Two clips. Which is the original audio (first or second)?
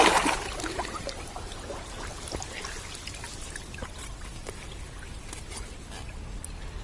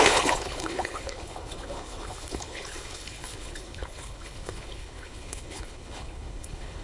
first